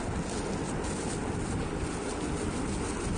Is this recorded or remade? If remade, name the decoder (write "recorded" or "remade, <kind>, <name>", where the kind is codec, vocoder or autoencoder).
recorded